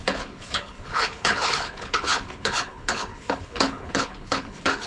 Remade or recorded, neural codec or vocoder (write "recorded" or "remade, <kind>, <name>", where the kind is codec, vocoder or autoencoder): remade, codec, HILCodec